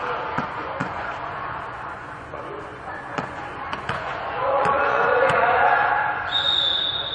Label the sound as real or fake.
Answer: fake